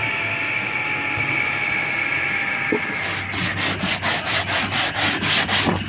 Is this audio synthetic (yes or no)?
no